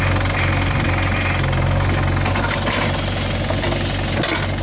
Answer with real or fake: real